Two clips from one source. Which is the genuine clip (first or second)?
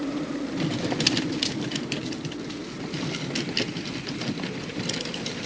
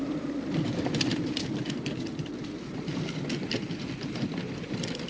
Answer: first